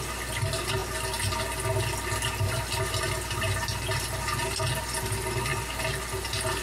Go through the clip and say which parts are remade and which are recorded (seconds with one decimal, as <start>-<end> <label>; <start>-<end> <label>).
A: 0.0-6.6 recorded